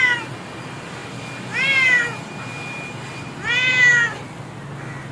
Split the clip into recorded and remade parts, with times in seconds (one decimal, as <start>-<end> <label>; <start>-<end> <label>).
0.0-5.1 recorded